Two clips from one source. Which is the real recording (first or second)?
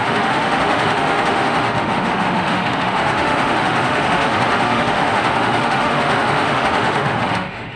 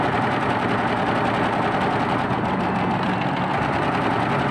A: second